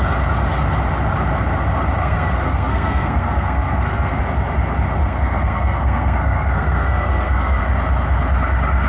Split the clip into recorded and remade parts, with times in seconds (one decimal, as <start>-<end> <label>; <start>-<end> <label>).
0.0-2.0 recorded; 2.0-4.2 remade; 4.2-5.0 recorded; 5.0-7.6 remade; 7.6-8.9 recorded